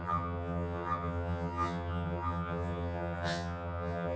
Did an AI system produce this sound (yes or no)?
yes